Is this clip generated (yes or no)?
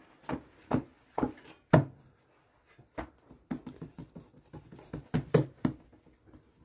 no